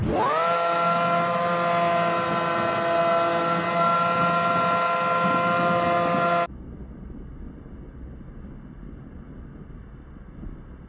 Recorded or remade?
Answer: recorded